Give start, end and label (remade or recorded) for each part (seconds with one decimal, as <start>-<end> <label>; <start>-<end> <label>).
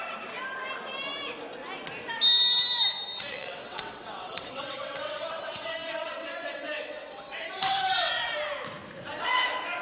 0.0-3.1 recorded; 3.1-8.1 remade; 8.1-9.8 recorded